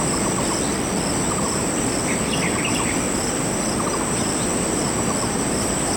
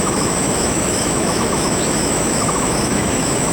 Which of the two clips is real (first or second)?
first